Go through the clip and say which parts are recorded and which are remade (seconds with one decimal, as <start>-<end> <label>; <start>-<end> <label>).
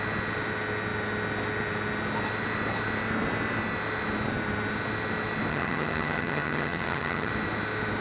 0.0-5.5 recorded; 5.5-7.3 remade; 7.3-8.0 recorded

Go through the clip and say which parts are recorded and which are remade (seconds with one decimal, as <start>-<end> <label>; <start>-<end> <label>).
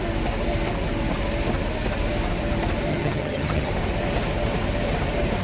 0.0-2.9 recorded; 2.9-3.7 remade; 3.7-5.4 recorded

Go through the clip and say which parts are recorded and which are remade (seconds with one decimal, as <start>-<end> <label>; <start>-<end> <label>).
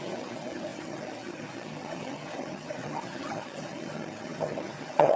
0.0-5.2 remade